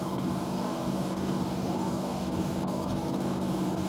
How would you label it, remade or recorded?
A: remade